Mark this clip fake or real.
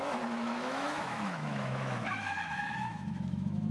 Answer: fake